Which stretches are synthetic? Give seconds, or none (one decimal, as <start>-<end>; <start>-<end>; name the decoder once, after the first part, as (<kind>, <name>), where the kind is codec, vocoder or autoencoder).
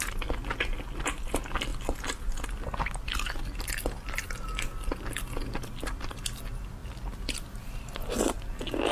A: none